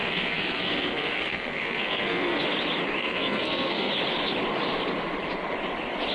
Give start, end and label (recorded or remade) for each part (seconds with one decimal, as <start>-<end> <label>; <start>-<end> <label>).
0.0-2.4 remade; 2.4-3.0 recorded; 3.0-3.9 remade; 3.9-6.1 recorded